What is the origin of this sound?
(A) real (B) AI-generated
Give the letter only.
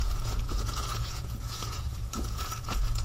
B